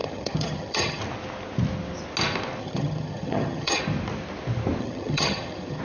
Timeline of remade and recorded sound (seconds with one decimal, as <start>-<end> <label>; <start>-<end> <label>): 0.0-1.0 remade; 1.0-2.6 recorded; 2.6-3.8 remade; 3.8-4.8 recorded; 4.8-5.8 remade